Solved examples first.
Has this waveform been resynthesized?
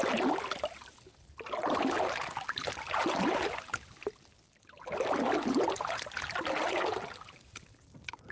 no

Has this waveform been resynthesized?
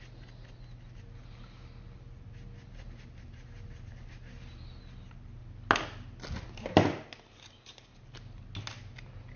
no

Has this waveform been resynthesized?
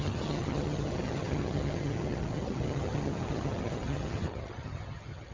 yes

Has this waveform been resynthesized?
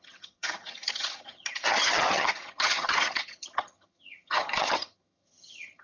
yes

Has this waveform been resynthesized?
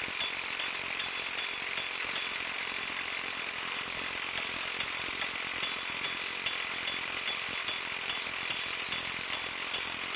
no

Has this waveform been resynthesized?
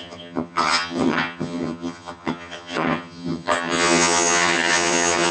yes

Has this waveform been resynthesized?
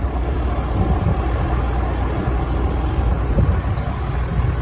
no